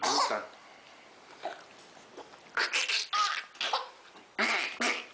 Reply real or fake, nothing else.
real